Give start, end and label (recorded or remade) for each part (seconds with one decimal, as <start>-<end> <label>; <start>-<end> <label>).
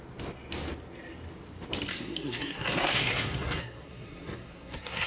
0.0-1.9 recorded; 1.9-5.1 remade